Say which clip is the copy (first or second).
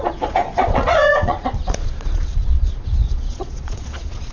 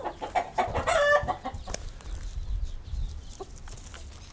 first